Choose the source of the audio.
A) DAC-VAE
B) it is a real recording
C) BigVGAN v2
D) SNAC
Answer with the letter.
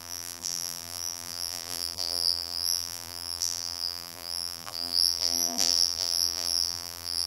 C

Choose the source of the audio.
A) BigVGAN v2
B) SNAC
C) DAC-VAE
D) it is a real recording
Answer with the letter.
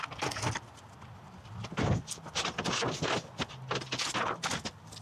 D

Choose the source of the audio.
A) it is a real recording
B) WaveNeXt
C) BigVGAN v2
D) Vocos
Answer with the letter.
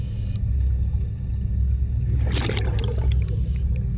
A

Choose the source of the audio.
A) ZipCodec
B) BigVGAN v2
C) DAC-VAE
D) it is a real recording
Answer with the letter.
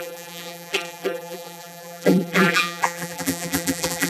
B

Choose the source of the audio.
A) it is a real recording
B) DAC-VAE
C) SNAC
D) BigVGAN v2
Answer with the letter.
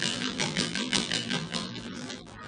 D